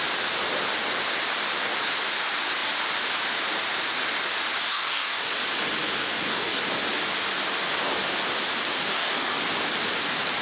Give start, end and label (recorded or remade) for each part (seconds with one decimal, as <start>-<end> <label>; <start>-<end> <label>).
0.0-4.7 recorded; 4.7-5.3 remade; 5.3-6.0 recorded; 6.0-6.6 remade; 6.6-8.9 recorded; 8.9-9.4 remade; 9.4-10.4 recorded